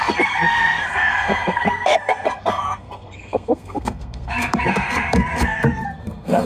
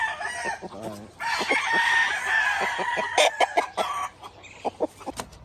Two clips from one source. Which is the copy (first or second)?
first